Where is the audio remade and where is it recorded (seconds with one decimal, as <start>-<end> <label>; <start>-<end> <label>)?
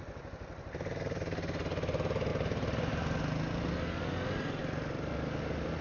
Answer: 0.0-2.3 recorded; 2.3-3.2 remade; 3.2-5.8 recorded